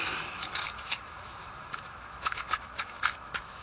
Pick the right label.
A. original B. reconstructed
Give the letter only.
B